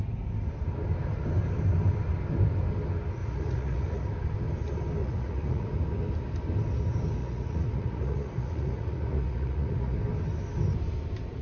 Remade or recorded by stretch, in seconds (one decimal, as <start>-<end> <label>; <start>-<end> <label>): 0.0-3.2 recorded; 3.2-4.0 remade; 4.0-5.0 recorded; 5.0-5.7 remade; 5.7-7.2 recorded; 7.2-10.0 remade; 10.0-11.4 recorded